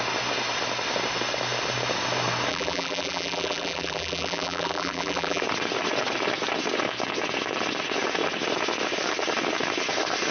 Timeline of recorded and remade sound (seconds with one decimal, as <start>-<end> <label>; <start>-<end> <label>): 0.0-2.5 recorded; 2.5-5.4 remade; 5.4-10.3 recorded